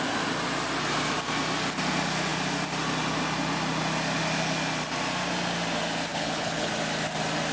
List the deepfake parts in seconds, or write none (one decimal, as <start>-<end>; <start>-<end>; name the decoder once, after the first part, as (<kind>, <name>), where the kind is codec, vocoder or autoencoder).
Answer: 6.1-6.7 (codec, HILCodec)